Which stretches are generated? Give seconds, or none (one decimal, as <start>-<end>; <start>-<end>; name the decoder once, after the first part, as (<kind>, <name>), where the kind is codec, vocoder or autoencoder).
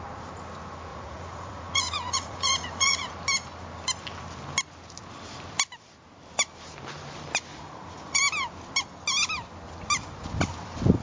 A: 0.9-3.1 (vocoder, Vocos); 7.5-8.2